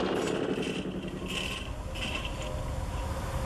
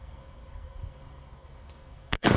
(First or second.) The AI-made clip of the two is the second